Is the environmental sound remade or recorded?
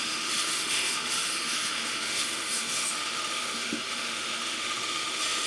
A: remade